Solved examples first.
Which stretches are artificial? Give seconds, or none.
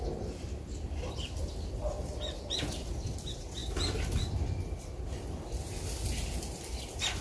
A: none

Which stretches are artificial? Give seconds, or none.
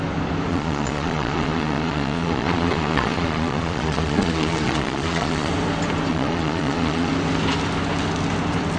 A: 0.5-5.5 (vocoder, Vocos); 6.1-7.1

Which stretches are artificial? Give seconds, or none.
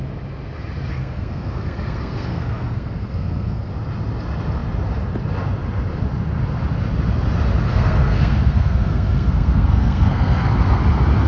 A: 0.9-3.7 (codec, SNAC); 7.7-10.8